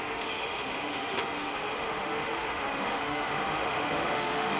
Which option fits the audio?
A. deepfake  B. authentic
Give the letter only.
A